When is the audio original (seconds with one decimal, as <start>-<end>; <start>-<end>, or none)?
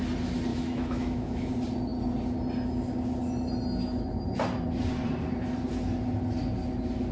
0.0-0.5; 1.5-7.1